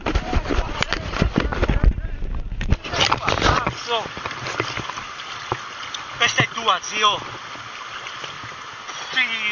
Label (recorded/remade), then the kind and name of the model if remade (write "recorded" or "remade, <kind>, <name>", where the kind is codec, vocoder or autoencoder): recorded